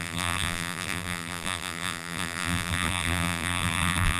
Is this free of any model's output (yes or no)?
no